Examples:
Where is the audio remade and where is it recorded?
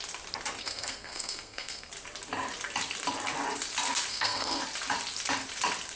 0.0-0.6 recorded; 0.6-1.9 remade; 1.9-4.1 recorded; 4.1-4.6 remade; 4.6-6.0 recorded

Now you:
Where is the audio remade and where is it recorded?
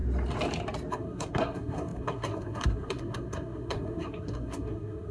0.0-0.9 recorded; 0.9-5.1 remade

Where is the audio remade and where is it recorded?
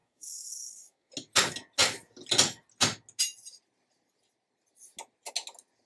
0.0-1.1 remade; 1.1-5.9 recorded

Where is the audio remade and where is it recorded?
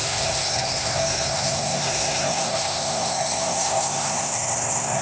0.0-5.0 remade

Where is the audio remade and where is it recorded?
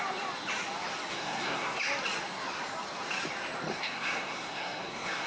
0.0-1.1 recorded; 1.1-1.8 remade; 1.8-3.7 recorded; 3.7-5.3 remade